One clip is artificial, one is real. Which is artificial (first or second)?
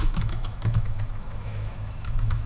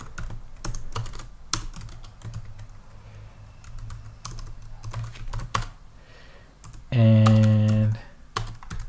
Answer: first